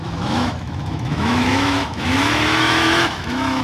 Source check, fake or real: fake